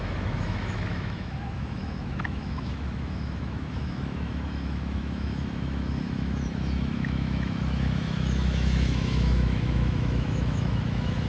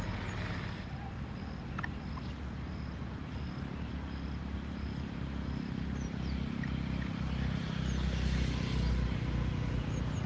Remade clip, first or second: first